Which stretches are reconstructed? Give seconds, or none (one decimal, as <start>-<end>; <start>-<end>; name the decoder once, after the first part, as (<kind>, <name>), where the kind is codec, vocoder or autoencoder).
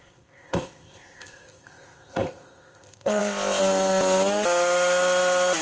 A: 0.0-3.6 (codec, ZipCodec)